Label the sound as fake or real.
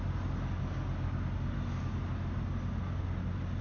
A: real